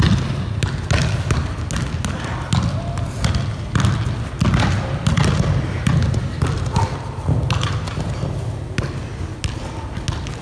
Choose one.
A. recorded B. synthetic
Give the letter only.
A